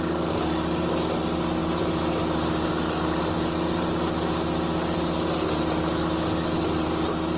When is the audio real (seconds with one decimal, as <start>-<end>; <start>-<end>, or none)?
0.0-7.4